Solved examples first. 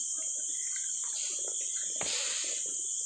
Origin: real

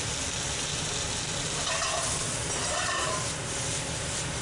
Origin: real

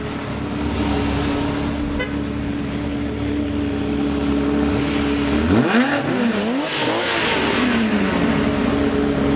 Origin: real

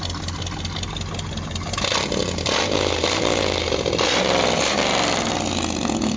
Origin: real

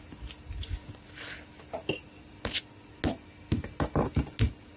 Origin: real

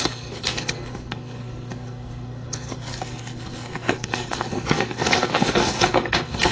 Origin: fake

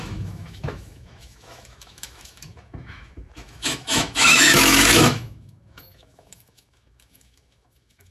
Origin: fake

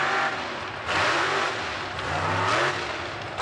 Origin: real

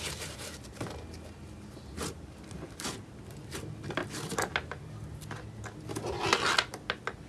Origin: real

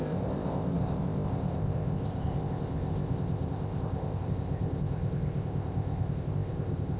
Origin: fake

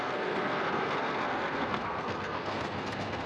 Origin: fake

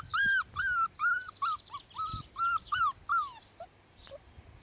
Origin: real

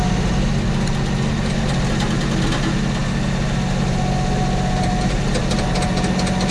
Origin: real